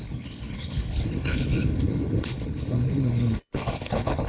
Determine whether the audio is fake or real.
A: fake